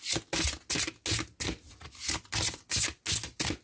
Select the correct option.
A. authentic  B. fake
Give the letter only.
A